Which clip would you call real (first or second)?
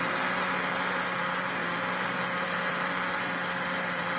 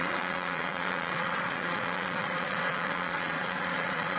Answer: first